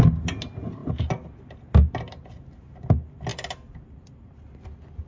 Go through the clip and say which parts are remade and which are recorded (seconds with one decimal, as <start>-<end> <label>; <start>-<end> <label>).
0.0-5.1 recorded